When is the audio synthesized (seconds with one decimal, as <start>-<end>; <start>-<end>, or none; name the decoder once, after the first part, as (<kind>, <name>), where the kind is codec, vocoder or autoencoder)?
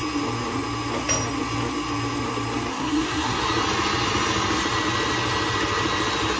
2.7-3.4 (codec, SNAC)